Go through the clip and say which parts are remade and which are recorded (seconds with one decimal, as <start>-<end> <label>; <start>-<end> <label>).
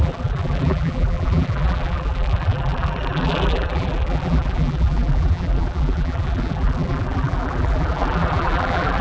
0.0-9.0 remade